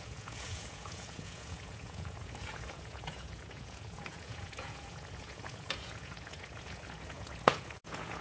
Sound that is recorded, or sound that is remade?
remade